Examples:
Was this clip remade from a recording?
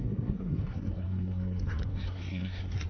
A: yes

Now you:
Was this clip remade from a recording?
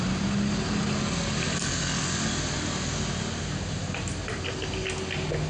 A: no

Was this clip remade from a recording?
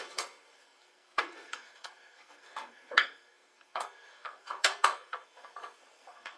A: yes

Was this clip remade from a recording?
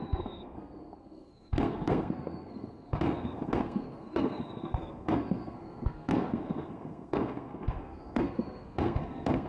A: yes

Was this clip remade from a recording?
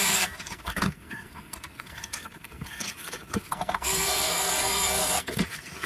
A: yes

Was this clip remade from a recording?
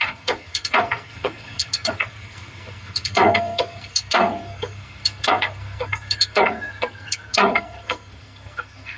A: yes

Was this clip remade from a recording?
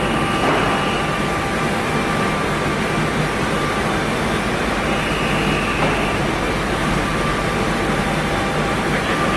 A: no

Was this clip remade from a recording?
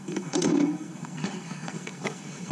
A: yes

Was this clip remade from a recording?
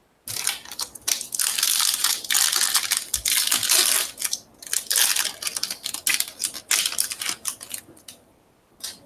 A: no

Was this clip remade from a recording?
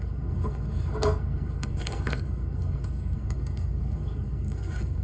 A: yes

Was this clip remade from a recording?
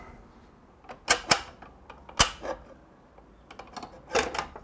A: no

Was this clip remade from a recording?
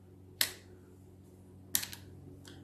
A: no